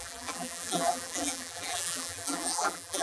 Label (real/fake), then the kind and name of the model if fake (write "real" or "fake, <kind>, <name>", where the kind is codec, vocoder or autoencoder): fake, vocoder, BigVGAN v2